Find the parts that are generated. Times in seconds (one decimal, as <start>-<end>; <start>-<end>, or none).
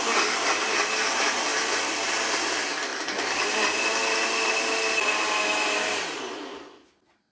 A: none